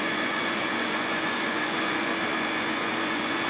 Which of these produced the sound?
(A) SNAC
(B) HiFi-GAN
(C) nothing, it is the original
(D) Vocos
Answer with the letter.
D